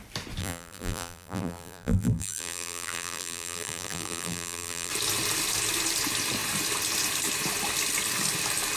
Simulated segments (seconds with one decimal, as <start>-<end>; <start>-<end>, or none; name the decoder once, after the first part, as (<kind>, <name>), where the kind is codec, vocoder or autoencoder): 0.4-4.9 (vocoder, BigVGAN v2)